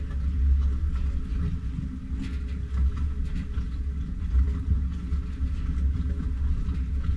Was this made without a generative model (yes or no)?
yes